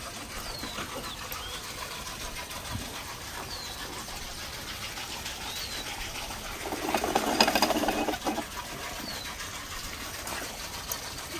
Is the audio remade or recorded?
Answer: recorded